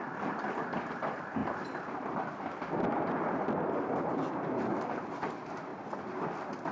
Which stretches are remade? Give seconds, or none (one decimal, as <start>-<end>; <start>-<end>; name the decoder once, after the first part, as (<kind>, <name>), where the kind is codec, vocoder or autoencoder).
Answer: 0.0-5.7 (vocoder, BigVGAN v2)